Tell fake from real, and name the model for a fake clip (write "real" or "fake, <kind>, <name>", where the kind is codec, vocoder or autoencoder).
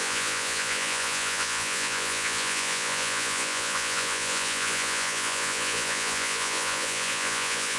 fake, vocoder, Vocos